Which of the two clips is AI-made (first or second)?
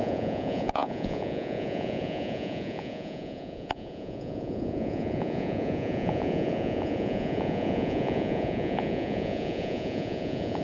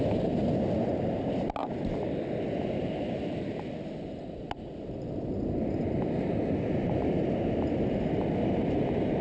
first